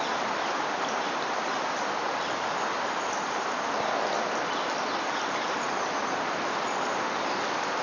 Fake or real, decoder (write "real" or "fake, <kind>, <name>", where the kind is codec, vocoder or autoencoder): real